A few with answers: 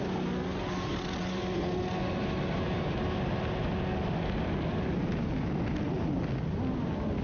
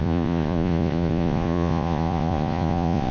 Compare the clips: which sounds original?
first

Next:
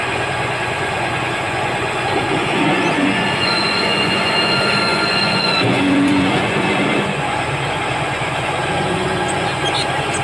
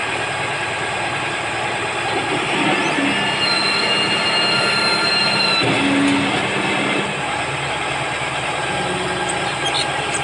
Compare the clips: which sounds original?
second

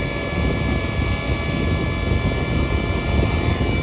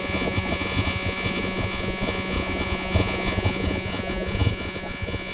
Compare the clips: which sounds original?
first